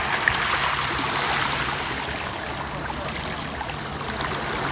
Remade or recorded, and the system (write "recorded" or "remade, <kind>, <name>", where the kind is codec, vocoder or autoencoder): recorded